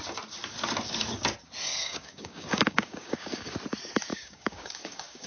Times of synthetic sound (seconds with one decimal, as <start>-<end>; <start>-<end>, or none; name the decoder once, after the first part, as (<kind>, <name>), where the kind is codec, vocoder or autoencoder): 1.8-3.5 (codec, DAC); 4.1-5.3